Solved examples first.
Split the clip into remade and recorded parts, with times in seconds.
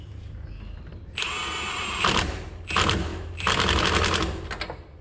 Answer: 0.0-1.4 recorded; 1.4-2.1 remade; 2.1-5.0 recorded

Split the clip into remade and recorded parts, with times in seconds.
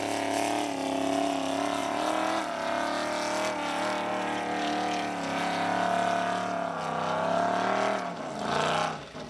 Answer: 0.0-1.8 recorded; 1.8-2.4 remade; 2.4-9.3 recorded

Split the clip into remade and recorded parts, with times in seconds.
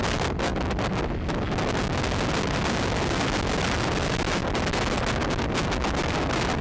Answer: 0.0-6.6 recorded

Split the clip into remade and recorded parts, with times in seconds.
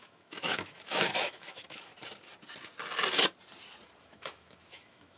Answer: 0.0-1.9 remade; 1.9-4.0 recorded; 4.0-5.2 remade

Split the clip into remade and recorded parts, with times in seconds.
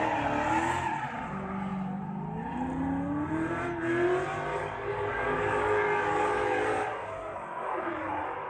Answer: 0.0-4.5 recorded; 4.5-8.5 remade